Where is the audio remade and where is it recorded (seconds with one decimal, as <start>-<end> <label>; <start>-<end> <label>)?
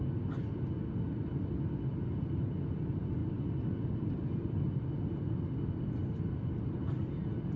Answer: 0.0-7.6 recorded